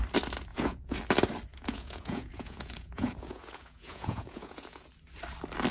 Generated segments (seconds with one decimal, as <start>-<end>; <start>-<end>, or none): 0.5-1.0; 1.5-4.9